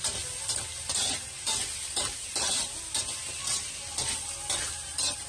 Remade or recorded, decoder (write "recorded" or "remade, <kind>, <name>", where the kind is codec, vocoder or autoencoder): recorded